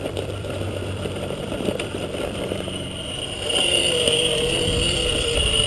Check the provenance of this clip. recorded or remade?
remade